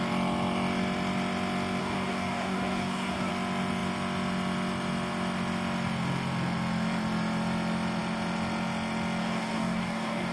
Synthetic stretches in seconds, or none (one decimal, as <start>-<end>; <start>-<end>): 1.8-3.3; 9.2-10.3